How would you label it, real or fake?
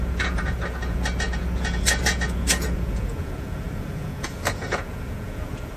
fake